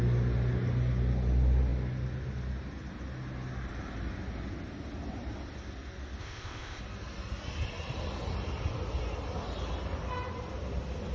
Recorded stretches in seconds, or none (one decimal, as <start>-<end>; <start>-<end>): 0.0-6.2; 6.8-11.1